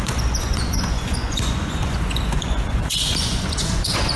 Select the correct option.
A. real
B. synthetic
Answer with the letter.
B